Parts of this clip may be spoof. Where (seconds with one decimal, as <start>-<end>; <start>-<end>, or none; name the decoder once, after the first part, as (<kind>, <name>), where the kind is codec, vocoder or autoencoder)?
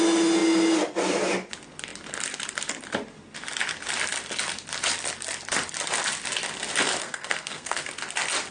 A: 7.0-7.9 (codec, SNAC)